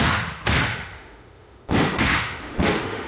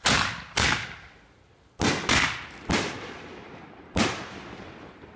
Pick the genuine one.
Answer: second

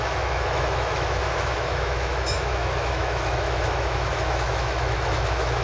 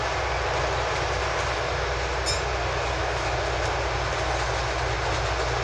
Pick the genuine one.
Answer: second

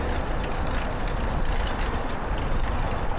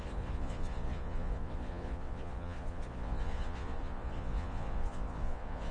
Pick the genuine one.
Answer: first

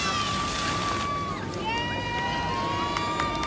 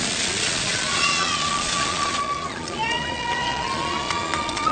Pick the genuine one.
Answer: first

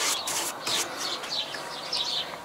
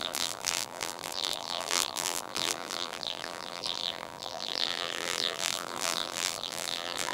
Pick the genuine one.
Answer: first